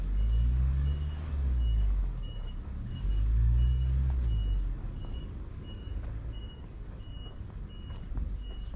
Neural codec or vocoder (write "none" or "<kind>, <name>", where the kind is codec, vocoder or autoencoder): codec, DAC